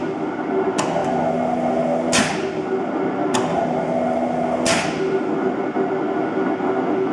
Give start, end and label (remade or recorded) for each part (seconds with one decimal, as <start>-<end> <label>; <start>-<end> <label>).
0.0-7.1 recorded